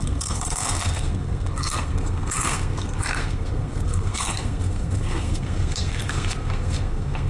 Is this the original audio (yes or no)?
no